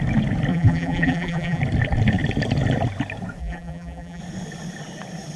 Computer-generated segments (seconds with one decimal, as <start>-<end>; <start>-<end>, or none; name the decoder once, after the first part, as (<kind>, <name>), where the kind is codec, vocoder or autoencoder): 0.5-1.6 (vocoder, BigVGAN v2); 3.4-4.2